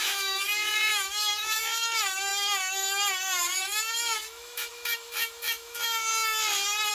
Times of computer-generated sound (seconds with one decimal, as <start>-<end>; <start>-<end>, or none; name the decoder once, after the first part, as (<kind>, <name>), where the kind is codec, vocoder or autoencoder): 0.0-6.1 (autoencoder, DAC-VAE)